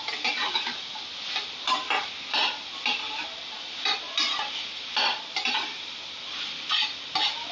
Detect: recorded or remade recorded